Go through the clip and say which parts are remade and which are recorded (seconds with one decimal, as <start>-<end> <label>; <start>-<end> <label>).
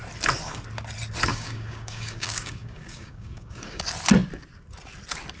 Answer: 0.0-1.3 recorded; 1.3-3.8 remade; 3.8-5.4 recorded